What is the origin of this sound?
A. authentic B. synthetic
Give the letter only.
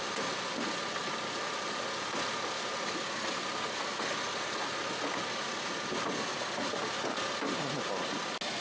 A